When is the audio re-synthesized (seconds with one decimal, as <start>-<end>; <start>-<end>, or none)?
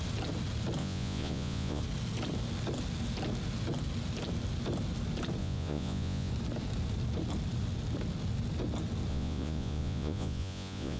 0.8-1.8; 5.4-6.3; 9.1-11.0